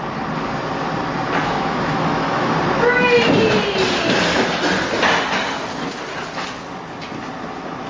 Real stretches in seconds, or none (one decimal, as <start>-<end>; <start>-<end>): 0.0-1.4; 2.5-7.9